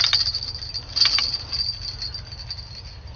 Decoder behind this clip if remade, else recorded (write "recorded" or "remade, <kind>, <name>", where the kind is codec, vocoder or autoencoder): recorded